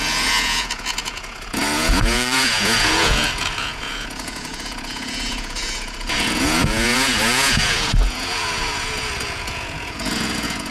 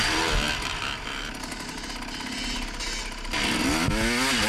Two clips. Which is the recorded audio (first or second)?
second